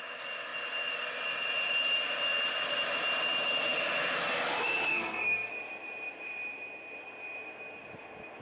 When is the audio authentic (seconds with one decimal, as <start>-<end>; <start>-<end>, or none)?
0.0-4.9; 5.5-8.4

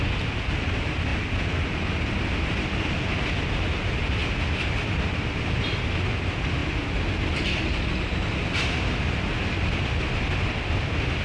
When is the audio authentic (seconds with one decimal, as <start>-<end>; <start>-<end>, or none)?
0.0-11.2